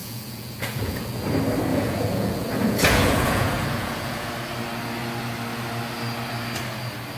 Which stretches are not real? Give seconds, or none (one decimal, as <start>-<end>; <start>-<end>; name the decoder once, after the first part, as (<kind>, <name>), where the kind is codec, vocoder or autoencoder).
0.0-1.2 (vocoder, Vocos); 1.7-4.3